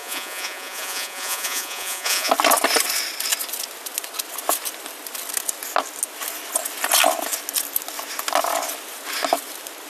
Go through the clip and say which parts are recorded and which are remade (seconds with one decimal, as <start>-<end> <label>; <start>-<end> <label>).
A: 0.0-2.3 remade; 2.3-9.9 recorded